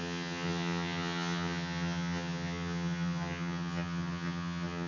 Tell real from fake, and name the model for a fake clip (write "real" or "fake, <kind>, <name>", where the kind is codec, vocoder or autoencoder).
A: fake, vocoder, HiFi-GAN